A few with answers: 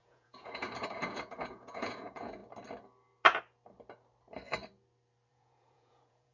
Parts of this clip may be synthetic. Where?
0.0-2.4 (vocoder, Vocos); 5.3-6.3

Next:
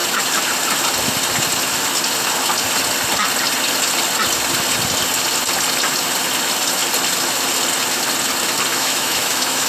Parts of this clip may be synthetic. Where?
8.7-9.7 (autoencoder, DAC-VAE)

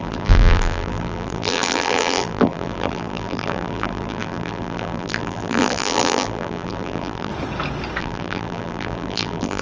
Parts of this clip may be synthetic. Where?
0.0-7.3 (vocoder, BigVGAN v2); 8.0-9.6

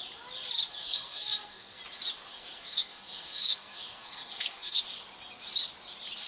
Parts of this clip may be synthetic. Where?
0.8-1.8 (codec, SNAC); 2.3-4.8